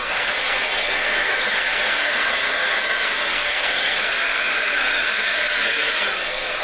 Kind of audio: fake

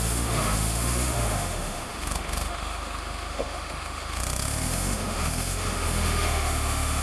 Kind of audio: fake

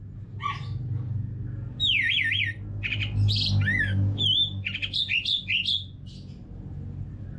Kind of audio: real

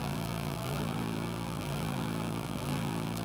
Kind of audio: fake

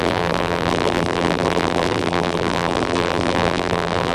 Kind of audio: fake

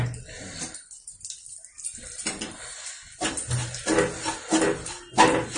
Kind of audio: real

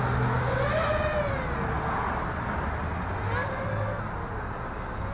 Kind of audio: real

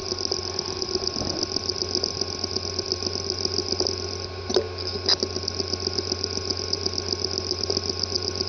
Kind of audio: real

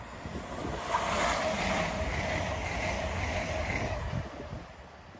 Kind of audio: real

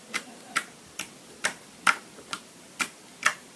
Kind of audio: fake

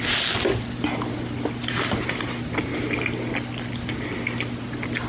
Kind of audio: real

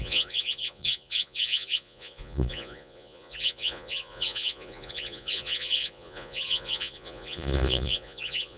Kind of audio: fake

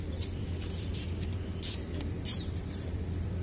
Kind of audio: fake